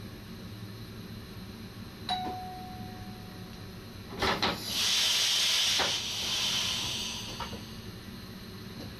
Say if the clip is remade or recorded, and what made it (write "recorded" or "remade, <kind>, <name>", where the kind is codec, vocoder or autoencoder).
recorded